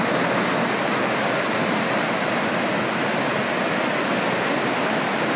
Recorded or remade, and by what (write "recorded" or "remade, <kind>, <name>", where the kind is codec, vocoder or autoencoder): recorded